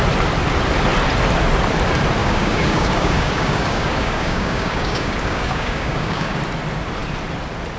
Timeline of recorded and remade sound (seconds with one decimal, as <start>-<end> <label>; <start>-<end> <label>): 0.0-2.2 recorded; 2.2-6.4 remade; 6.4-7.8 recorded